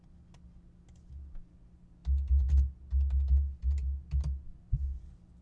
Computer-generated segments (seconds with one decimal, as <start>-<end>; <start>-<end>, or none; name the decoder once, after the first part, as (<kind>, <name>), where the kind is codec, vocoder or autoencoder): none

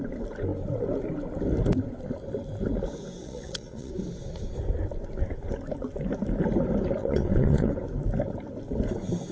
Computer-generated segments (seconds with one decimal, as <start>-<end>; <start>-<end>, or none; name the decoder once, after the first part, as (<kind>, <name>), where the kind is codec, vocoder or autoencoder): 3.2-3.9 (vocoder, WaveNeXt); 7.0-7.7

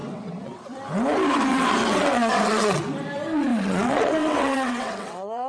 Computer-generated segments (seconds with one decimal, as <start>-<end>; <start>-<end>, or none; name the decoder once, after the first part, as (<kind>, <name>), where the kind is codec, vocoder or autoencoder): 0.0-0.6 (vocoder, WaveNeXt); 1.5-2.8; 3.5-5.5